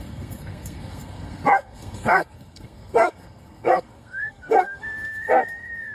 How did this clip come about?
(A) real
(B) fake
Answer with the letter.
B